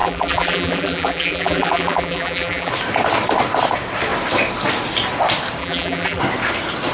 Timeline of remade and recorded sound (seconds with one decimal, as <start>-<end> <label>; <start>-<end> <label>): 0.0-2.7 remade; 2.7-5.6 recorded; 5.6-6.2 remade; 6.2-6.9 recorded